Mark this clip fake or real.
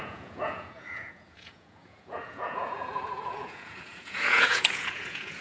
fake